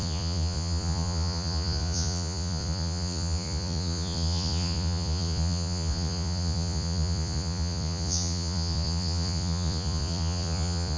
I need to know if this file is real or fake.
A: fake